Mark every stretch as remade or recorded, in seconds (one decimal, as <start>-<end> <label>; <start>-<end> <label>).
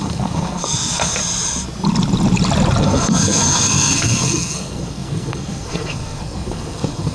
0.0-1.2 remade; 1.2-2.8 recorded; 2.8-7.1 remade